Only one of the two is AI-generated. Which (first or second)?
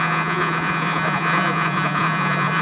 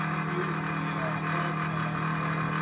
first